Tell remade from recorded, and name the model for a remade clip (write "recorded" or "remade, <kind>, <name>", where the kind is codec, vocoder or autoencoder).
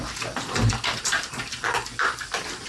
recorded